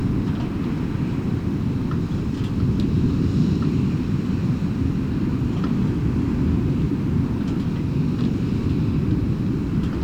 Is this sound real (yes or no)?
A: yes